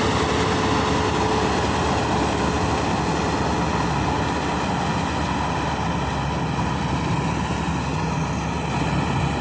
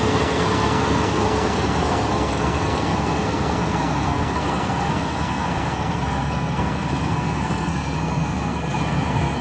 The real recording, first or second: first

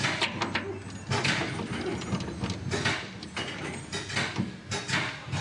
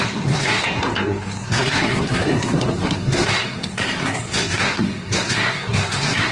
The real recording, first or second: first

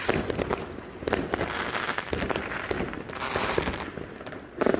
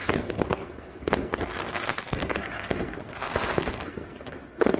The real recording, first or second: first